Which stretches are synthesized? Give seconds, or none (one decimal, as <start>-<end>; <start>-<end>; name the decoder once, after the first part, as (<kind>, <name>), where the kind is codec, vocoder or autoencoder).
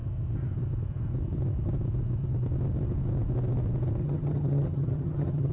4.0-5.5 (vocoder, HiFi-GAN)